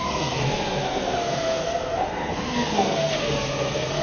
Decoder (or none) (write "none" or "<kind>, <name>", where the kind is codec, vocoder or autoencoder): codec, SNAC